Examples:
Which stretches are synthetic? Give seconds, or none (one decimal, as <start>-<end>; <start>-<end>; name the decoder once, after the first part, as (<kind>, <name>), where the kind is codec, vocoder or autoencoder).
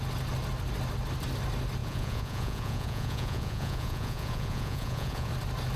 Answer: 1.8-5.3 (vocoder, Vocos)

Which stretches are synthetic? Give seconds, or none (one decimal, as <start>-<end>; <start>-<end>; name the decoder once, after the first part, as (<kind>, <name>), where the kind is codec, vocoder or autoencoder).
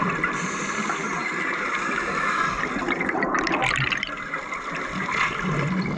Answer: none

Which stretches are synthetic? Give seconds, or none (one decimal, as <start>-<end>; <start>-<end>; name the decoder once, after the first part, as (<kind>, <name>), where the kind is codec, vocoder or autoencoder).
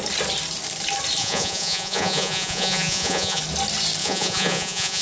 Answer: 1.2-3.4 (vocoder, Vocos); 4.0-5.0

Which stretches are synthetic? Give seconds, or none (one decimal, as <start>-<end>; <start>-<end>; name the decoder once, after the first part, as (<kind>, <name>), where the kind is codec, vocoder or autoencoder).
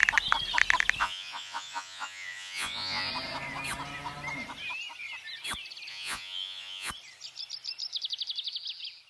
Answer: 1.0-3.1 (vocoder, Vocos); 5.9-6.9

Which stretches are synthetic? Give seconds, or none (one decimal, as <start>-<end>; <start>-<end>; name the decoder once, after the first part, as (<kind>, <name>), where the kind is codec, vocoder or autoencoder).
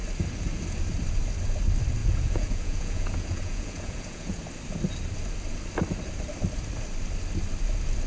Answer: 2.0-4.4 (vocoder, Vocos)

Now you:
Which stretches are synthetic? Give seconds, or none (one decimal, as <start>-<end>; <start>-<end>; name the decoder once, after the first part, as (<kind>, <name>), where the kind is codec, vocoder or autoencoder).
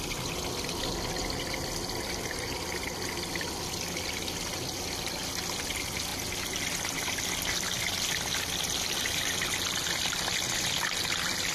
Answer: none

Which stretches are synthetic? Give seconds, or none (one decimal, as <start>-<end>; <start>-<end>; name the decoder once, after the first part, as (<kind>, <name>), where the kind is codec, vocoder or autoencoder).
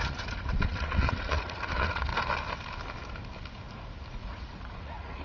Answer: 0.0-2.1 (vocoder, Vocos); 4.1-5.2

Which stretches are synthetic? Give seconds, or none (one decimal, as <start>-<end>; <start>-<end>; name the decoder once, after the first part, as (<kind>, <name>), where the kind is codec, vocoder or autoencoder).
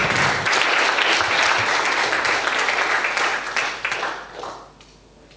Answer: none